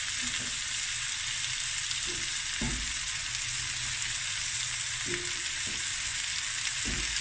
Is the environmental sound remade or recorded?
recorded